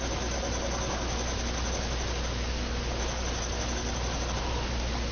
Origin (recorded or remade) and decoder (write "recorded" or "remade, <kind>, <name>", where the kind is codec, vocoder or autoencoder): recorded